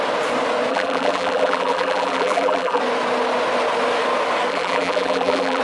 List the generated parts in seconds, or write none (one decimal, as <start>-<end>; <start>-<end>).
0.7-2.8; 4.5-5.6